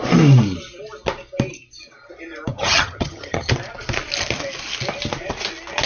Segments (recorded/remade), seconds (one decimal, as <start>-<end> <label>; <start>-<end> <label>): 0.0-2.5 recorded; 2.5-3.5 remade; 3.5-5.9 recorded